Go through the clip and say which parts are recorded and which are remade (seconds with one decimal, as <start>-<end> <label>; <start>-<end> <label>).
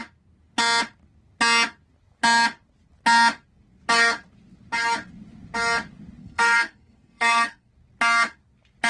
0.0-6.2 recorded; 6.2-7.7 remade; 7.7-8.9 recorded